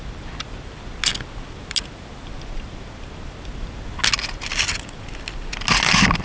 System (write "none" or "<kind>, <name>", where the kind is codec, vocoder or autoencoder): none